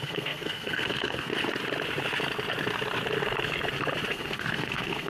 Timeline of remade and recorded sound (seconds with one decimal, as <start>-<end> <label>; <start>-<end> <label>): 0.0-1.3 remade; 1.3-4.1 recorded; 4.1-5.1 remade